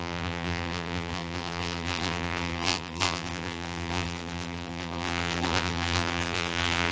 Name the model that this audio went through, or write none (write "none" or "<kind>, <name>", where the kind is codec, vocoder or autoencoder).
vocoder, BigVGAN v2